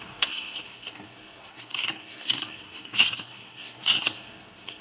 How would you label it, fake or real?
fake